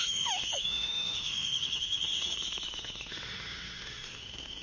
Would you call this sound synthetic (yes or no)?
yes